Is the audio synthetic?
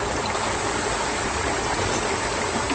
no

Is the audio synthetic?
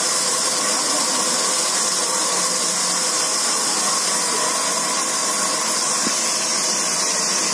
no